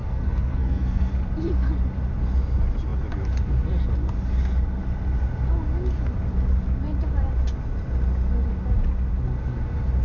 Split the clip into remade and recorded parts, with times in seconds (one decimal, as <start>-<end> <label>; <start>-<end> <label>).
0.0-1.1 remade; 1.1-10.0 recorded